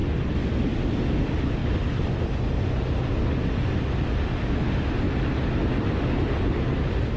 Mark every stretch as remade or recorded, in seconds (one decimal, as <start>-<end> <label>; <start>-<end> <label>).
0.0-7.2 recorded